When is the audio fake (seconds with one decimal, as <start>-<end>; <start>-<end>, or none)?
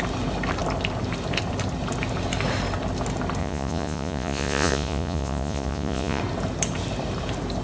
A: 3.4-6.2